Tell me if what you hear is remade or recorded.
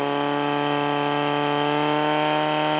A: recorded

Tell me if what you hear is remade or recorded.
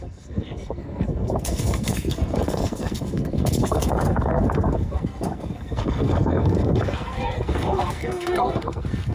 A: remade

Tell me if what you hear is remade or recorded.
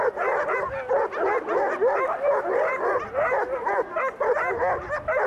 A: recorded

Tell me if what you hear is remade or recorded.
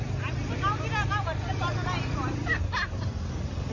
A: recorded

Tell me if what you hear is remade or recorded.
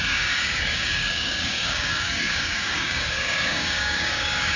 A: remade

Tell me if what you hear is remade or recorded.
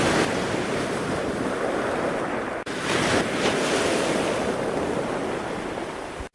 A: recorded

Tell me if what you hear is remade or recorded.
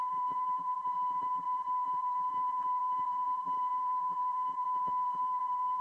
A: remade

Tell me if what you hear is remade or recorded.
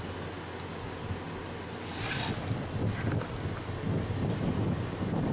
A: recorded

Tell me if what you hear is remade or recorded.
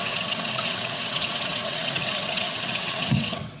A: remade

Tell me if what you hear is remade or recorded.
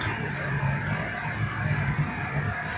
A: recorded